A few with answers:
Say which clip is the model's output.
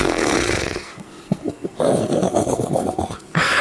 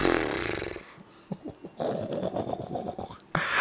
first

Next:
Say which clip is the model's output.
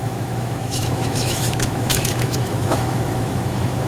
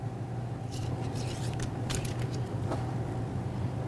first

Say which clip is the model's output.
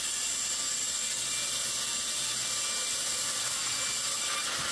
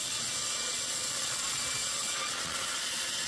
second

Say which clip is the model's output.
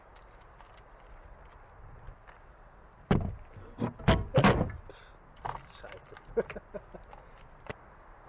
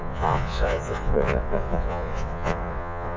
second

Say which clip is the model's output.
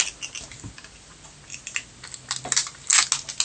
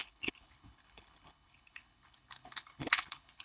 second